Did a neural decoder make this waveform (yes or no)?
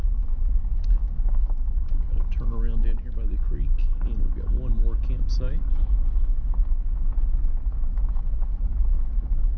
no